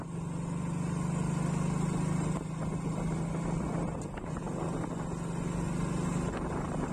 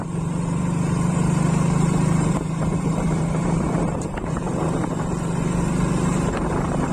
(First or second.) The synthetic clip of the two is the second